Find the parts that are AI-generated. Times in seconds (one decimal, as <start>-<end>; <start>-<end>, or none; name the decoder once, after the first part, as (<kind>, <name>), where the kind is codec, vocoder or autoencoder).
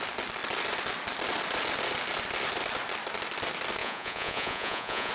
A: 3.8-5.1 (vocoder, Vocos)